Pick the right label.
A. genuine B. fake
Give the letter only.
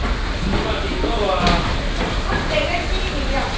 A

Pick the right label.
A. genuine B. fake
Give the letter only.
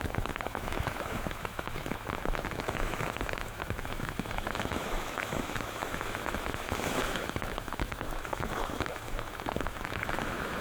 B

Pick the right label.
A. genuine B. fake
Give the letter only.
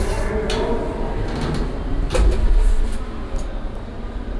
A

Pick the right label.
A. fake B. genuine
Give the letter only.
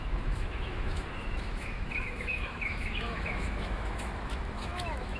A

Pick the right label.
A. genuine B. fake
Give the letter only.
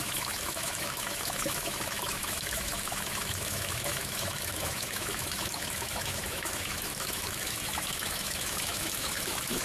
B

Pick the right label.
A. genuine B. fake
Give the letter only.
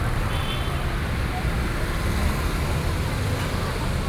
A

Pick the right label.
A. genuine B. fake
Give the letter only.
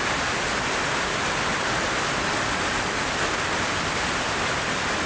A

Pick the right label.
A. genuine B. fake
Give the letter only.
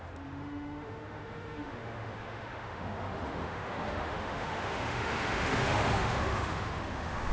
B